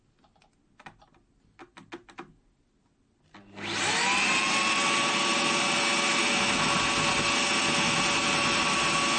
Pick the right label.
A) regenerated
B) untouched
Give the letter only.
B